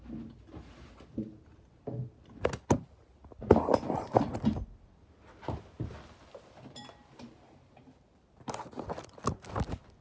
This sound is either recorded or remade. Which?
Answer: recorded